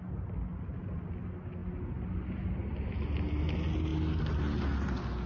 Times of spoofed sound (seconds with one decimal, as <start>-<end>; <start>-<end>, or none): none